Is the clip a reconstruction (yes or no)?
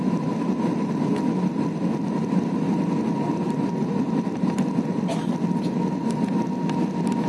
no